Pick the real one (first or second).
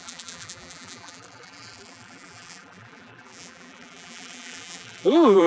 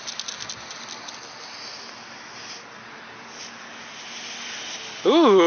second